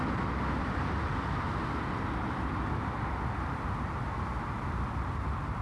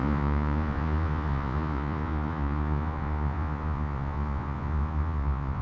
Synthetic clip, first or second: second